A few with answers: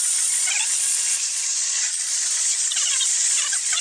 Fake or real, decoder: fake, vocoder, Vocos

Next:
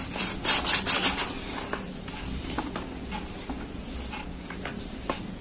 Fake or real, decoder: real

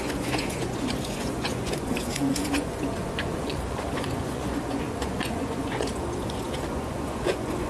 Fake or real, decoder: fake, vocoder, Vocos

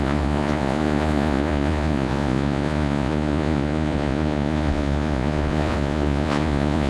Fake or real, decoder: fake, vocoder, Vocos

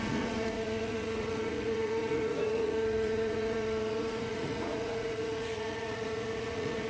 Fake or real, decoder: fake, vocoder, Vocos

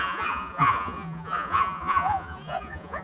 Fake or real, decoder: fake, vocoder, Vocos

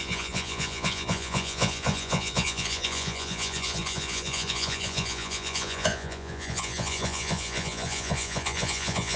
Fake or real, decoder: fake, vocoder, Vocos